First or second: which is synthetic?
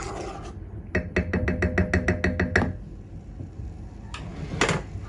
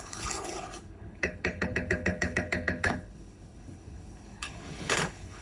second